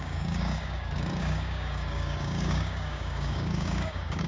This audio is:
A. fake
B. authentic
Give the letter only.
A